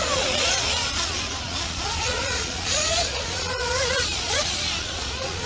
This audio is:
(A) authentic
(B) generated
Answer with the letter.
B